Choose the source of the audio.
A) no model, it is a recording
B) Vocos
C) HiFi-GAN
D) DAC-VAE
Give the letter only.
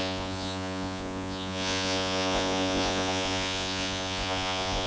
B